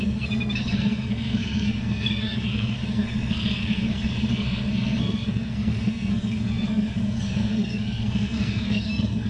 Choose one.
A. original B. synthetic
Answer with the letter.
B